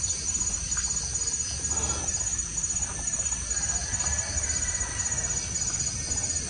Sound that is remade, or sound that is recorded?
recorded